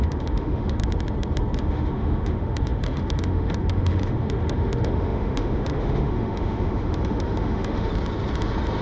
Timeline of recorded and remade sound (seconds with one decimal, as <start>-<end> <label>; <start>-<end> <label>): 0.0-0.8 remade; 0.8-1.6 recorded; 1.6-7.9 remade; 7.9-8.8 recorded